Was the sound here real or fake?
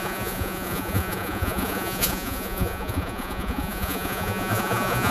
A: fake